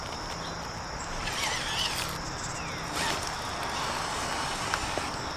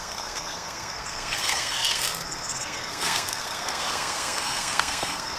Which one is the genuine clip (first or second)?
first